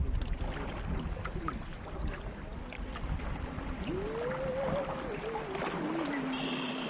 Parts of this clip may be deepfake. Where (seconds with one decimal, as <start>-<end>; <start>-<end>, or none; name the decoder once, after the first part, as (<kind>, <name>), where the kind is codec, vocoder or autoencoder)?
none